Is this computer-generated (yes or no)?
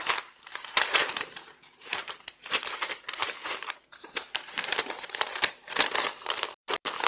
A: yes